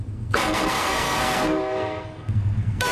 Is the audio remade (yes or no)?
yes